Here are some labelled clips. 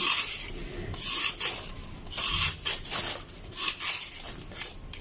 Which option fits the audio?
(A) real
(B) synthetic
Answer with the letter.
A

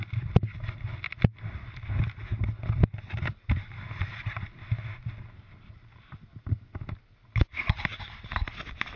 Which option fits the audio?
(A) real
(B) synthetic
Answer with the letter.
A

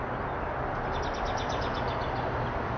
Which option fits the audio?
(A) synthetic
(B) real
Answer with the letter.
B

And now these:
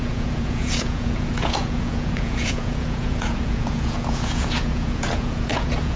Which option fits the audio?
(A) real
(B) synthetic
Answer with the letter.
B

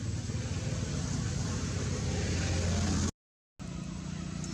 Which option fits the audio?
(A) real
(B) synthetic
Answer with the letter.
A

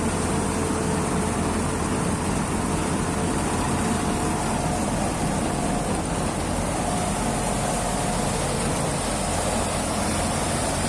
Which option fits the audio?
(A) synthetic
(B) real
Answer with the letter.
B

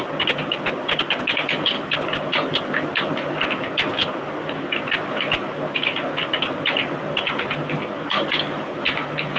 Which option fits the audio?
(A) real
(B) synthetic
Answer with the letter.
A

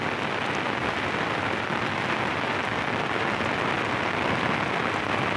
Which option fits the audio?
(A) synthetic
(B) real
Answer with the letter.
B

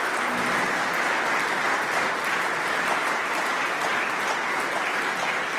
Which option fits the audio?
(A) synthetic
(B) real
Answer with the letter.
B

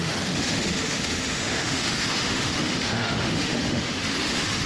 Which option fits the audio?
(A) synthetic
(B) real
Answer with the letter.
A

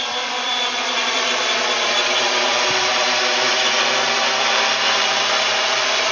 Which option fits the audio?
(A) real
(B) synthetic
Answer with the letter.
B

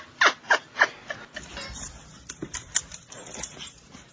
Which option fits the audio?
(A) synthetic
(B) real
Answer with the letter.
B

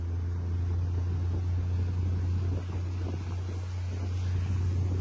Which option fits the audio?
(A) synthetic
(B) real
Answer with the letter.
B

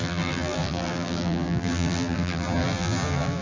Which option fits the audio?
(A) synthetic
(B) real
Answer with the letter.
A